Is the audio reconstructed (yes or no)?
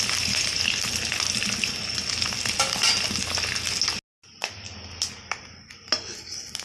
no